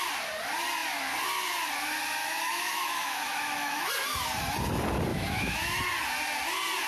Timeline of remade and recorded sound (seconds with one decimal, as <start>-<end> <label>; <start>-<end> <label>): 0.0-2.2 recorded; 2.2-3.9 remade; 3.9-5.1 recorded; 5.1-5.8 remade; 5.8-6.9 recorded